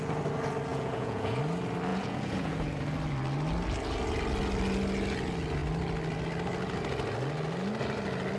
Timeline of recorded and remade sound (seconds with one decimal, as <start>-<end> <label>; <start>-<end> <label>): 0.0-0.7 recorded; 0.7-1.4 remade; 1.4-1.9 recorded; 1.9-2.8 remade; 2.8-8.4 recorded